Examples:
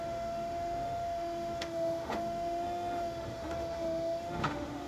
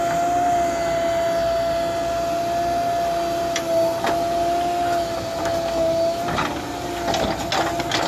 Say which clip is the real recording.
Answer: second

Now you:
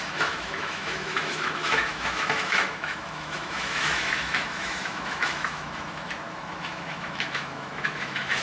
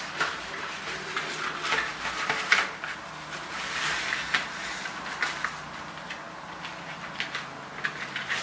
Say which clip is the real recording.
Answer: second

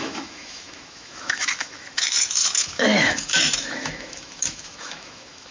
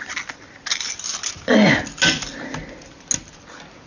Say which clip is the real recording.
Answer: second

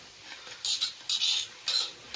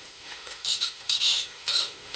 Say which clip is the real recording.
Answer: first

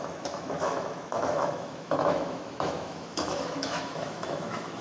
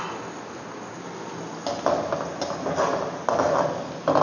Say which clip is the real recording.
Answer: second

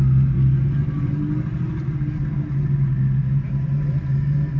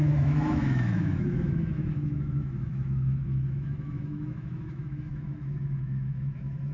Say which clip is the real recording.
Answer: first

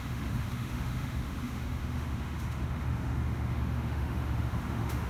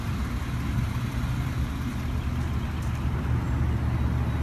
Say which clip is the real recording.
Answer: second